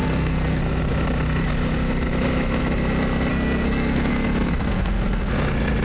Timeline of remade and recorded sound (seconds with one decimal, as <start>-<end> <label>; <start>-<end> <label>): 0.0-0.6 remade; 0.6-3.3 recorded; 3.3-4.1 remade; 4.1-4.6 recorded; 4.6-5.3 remade; 5.3-5.8 recorded